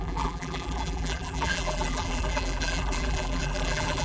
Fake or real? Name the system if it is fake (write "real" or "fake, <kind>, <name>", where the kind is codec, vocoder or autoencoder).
fake, vocoder, BigVGAN v2